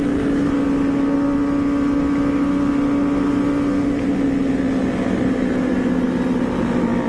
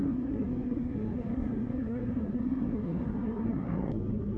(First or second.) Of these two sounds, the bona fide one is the first